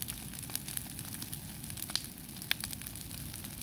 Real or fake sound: real